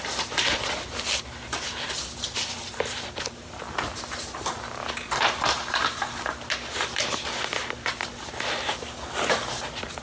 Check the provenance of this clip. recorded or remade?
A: recorded